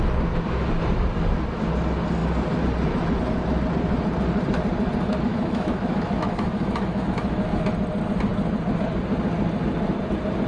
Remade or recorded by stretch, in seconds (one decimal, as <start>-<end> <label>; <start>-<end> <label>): 0.0-5.3 recorded; 5.3-7.6 remade; 7.6-10.5 recorded